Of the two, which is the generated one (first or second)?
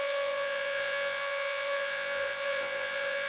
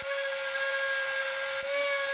first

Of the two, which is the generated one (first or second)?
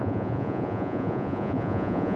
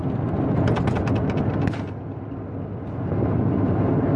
first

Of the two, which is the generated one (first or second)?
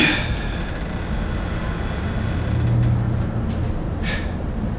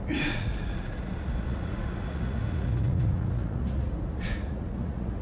second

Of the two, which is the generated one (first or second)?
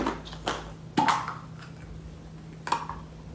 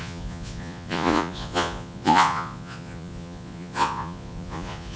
second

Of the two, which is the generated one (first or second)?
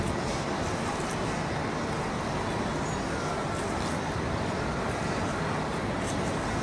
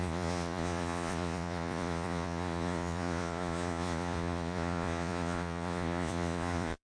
second